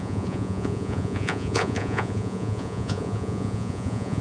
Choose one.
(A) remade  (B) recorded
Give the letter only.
A